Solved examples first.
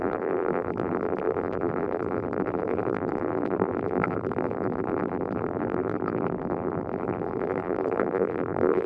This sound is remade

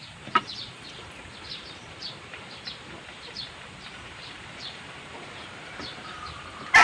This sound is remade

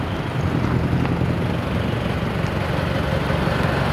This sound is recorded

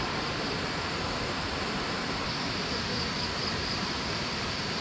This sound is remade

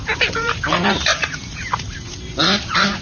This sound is remade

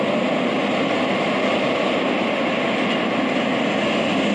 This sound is recorded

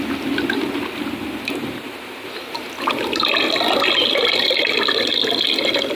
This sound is recorded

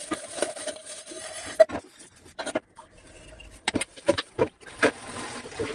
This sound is remade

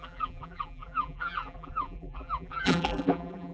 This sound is remade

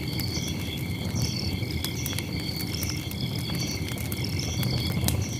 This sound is recorded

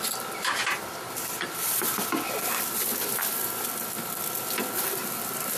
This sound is remade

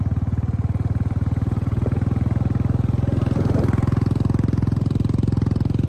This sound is remade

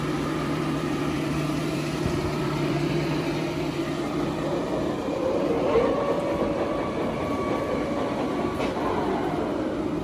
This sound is remade